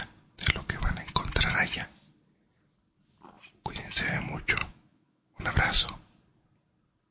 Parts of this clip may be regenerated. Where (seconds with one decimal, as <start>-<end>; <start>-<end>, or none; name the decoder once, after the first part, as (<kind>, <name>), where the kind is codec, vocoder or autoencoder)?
4.6-5.5 (autoencoder, DAC-VAE)